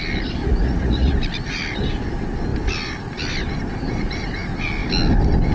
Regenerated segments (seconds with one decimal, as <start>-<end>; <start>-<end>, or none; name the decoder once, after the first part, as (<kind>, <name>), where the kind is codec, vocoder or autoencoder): 0.4-1.1 (vocoder, Vocos)